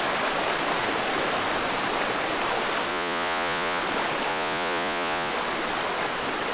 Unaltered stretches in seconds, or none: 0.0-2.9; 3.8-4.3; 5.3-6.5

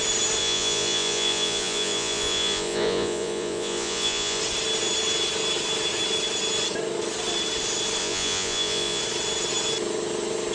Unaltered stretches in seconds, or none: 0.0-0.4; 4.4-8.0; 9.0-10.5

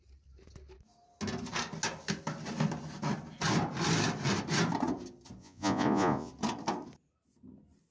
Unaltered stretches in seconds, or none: 0.0-5.4; 6.3-7.9

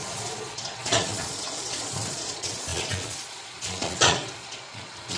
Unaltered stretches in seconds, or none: none